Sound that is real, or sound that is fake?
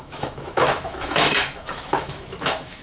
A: fake